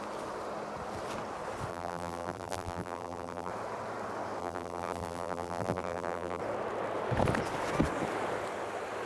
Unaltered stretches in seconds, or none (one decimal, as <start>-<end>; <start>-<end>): 0.0-1.7; 3.5-4.4; 6.4-9.1

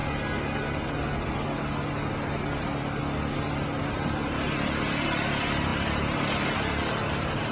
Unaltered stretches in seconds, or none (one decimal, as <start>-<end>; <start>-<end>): 0.0-2.3; 3.0-3.8